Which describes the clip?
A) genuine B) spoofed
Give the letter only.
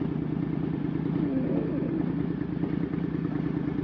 A